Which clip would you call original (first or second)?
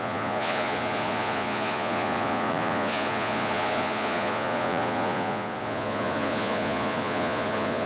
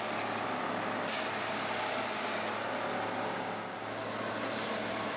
second